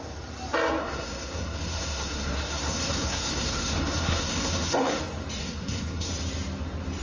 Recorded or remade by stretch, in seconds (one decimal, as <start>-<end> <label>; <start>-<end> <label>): 0.0-0.8 recorded; 0.8-5.0 remade; 5.0-5.4 recorded; 5.4-6.1 remade; 6.1-7.0 recorded